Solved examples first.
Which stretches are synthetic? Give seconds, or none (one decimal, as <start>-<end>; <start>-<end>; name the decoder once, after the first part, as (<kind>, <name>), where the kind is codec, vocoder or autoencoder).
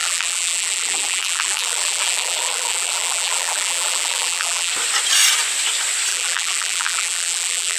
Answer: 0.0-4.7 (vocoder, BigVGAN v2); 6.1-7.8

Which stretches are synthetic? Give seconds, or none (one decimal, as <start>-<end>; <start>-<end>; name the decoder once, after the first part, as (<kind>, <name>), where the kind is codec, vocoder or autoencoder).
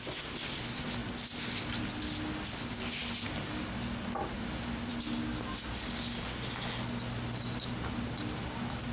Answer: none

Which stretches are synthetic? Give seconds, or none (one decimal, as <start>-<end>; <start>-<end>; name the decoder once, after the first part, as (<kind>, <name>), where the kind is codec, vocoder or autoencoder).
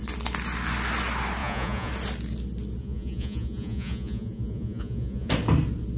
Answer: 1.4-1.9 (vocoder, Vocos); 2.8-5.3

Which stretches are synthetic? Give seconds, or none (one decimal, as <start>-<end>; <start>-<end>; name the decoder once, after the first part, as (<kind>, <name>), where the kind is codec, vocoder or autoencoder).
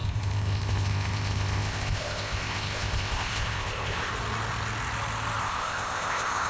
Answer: 0.0-4.1 (codec, ZipCodec); 5.4-6.5